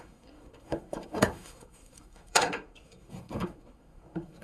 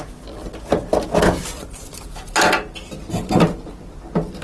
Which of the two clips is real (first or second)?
second